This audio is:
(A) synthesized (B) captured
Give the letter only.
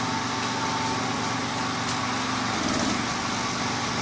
B